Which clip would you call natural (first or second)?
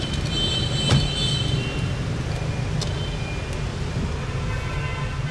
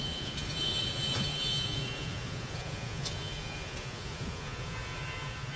first